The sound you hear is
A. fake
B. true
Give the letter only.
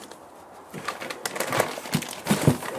B